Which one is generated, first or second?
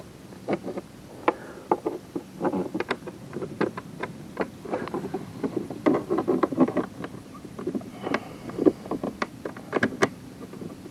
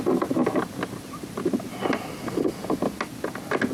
first